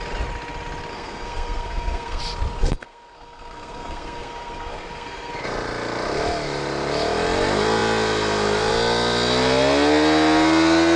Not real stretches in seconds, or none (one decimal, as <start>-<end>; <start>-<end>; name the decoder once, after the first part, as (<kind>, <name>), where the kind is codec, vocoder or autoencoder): 0.9-2.2 (codec, SNAC); 2.6-5.3